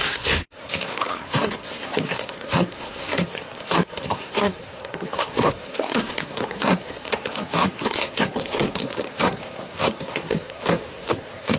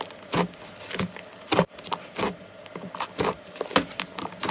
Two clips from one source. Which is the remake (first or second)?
first